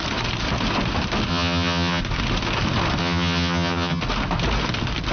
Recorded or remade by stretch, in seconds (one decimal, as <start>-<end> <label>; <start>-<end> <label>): 0.0-1.3 recorded; 1.3-2.0 remade; 2.0-3.0 recorded; 3.0-4.0 remade; 4.0-5.1 recorded